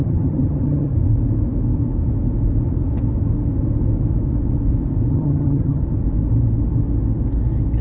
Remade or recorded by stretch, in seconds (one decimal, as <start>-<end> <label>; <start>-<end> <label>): 0.0-0.9 remade; 0.9-5.1 recorded; 5.1-5.8 remade; 5.8-7.8 recorded